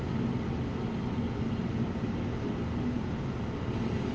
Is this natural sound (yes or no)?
yes